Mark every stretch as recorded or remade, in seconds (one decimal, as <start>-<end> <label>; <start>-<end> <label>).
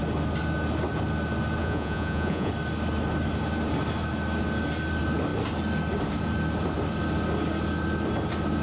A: 0.0-1.6 recorded; 1.6-2.5 remade; 2.5-8.6 recorded